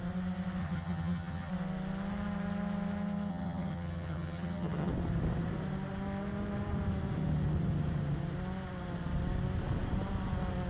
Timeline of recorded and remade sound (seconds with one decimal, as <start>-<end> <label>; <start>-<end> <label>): 0.0-0.6 recorded; 0.6-1.5 remade; 1.5-3.3 recorded; 3.3-4.9 remade; 4.9-10.7 recorded